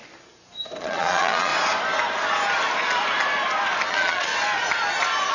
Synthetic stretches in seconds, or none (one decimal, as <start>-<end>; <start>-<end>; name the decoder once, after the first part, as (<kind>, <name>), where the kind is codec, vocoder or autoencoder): 0.8-1.5 (vocoder, Vocos); 3.9-4.3